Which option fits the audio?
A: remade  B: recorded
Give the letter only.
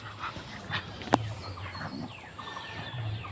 B